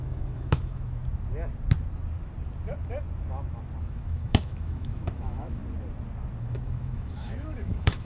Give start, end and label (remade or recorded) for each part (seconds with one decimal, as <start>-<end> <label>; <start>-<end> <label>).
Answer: 0.0-1.0 remade; 1.0-3.8 recorded; 3.8-5.6 remade; 5.6-6.4 recorded; 6.4-8.0 remade